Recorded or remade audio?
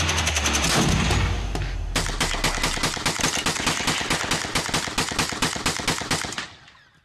recorded